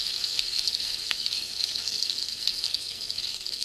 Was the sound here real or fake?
fake